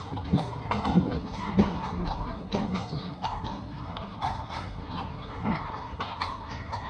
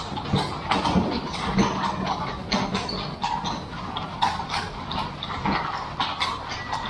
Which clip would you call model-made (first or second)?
first